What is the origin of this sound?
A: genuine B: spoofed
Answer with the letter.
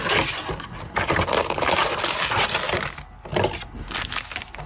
A